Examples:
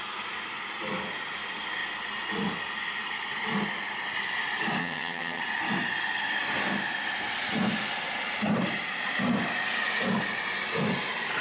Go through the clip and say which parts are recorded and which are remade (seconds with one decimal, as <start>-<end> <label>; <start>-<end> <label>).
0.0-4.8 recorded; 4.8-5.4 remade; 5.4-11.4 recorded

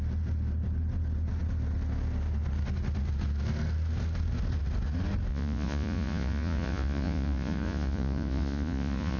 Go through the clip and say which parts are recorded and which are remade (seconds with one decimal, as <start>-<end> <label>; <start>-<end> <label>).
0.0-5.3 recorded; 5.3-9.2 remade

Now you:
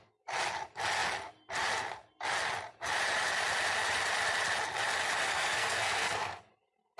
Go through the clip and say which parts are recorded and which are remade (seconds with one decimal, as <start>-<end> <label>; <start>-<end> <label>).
0.0-5.2 recorded; 5.2-6.4 remade; 6.4-7.0 recorded

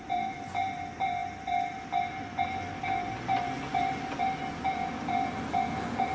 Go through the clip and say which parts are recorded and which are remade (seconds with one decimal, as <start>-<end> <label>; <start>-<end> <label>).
0.0-6.1 recorded

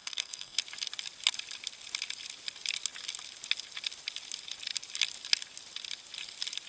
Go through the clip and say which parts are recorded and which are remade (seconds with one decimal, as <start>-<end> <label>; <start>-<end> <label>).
0.0-0.6 remade; 0.6-6.7 recorded

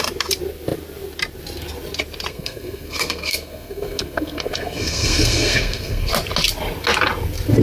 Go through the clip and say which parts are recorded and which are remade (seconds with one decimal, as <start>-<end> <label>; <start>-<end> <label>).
0.0-2.3 recorded; 2.3-6.1 remade; 6.1-7.6 recorded

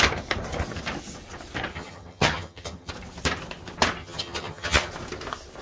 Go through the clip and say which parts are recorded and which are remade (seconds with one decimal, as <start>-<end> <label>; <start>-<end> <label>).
0.0-1.7 recorded; 1.7-2.9 remade; 2.9-4.0 recorded; 4.0-4.9 remade; 4.9-5.6 recorded